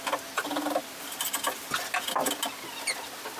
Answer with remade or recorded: recorded